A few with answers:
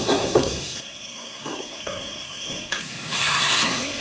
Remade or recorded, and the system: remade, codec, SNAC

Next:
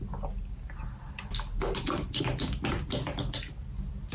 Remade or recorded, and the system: recorded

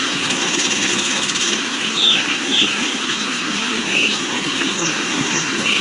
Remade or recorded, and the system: remade, codec, SNAC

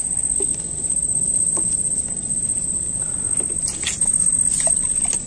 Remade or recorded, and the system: recorded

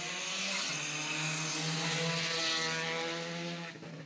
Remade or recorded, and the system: recorded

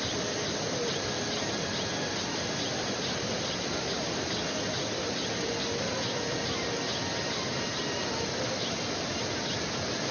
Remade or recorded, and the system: recorded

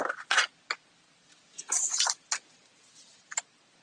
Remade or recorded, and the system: recorded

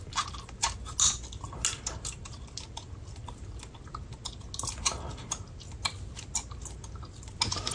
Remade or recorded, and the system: recorded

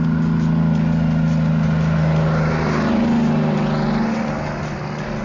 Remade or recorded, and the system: recorded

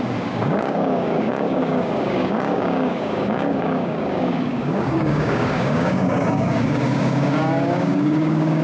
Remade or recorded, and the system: remade, codec, DAC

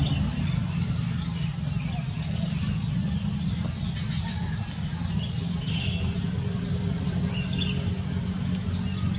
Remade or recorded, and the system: recorded